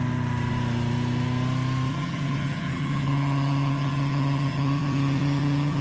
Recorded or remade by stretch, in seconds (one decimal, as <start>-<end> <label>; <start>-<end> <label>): 0.0-1.9 recorded; 1.9-5.8 remade

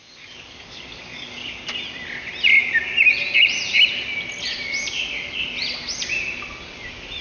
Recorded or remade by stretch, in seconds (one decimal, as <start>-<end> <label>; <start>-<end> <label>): 0.0-1.6 remade; 1.6-7.2 recorded

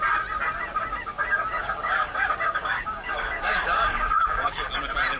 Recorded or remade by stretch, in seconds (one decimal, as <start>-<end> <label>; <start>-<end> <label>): 0.0-1.6 recorded; 1.6-4.7 remade; 4.7-5.2 recorded

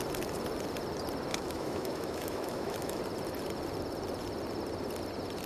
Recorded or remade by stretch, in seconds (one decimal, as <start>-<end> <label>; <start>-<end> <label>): 0.0-1.3 recorded; 1.3-3.0 remade; 3.0-5.5 recorded